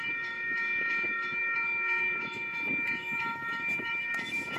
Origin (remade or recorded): remade